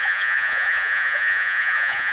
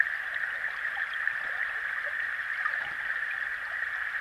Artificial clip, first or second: first